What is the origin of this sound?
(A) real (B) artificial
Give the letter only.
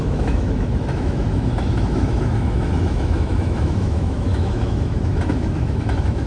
B